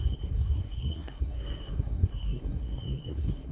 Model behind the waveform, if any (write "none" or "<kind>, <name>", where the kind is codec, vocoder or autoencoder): codec, SNAC